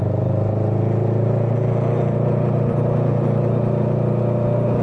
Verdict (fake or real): real